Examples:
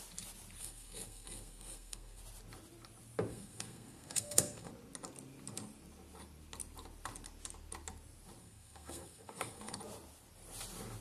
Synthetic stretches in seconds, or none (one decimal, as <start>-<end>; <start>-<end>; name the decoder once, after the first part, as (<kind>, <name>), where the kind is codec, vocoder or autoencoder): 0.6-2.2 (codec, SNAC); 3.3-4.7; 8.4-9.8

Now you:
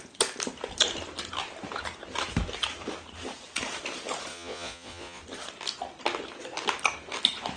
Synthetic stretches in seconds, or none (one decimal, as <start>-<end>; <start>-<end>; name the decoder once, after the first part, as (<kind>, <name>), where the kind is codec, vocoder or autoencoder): 4.3-5.2 (vocoder, Vocos)

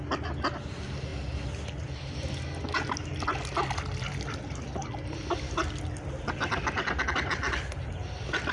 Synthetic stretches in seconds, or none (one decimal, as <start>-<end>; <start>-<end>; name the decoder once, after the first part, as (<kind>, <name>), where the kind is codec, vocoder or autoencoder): none

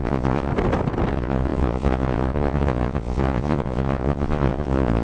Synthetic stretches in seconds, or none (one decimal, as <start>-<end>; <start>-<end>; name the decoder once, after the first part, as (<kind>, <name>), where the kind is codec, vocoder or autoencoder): 0.0-0.5 (vocoder, Vocos); 1.1-5.0

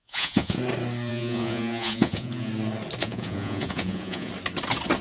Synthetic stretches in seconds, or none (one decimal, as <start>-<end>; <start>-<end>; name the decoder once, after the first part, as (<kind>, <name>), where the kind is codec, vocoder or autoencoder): 0.0-0.6 (vocoder, Vocos); 1.1-2.5; 3.0-4.3

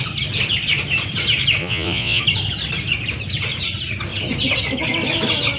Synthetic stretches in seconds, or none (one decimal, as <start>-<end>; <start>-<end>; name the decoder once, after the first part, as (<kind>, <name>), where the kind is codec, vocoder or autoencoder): 1.6-2.2 (vocoder, Vocos)

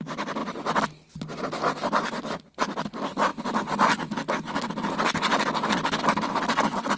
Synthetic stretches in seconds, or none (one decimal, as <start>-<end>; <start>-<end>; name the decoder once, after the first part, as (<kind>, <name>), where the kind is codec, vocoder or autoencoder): none